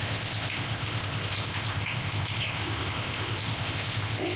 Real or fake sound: fake